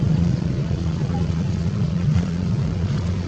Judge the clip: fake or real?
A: fake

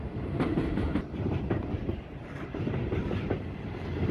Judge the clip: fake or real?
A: real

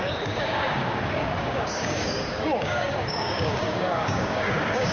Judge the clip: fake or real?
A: fake